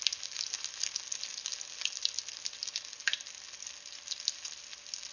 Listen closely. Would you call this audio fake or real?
real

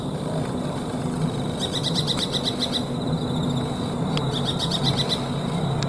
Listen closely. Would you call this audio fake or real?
real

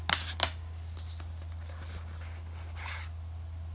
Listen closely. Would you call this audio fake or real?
real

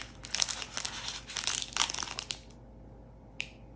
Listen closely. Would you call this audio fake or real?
real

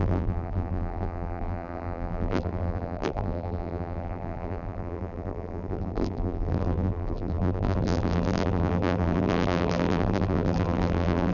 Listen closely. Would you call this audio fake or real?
fake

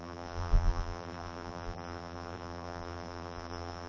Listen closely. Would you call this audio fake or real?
fake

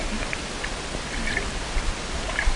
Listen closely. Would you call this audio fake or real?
real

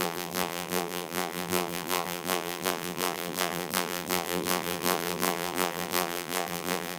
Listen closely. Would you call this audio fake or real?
fake